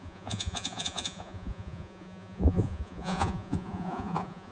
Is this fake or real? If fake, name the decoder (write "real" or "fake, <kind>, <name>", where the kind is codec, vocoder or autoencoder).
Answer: fake, vocoder, Vocos